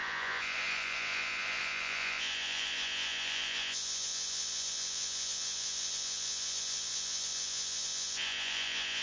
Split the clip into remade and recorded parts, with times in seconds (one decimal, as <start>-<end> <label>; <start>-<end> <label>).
0.0-9.0 remade